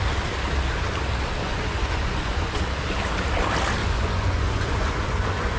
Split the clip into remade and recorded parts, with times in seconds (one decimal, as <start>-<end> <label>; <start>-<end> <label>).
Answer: 0.0-1.4 recorded; 1.4-2.6 remade; 2.6-3.8 recorded; 3.8-5.6 remade